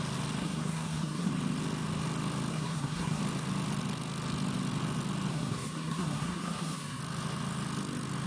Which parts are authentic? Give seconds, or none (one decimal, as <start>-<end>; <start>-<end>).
0.0-0.4; 1.3-2.5; 3.2-5.3; 7.0-8.3